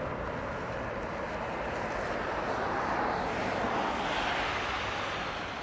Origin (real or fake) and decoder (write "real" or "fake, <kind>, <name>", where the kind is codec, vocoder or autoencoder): real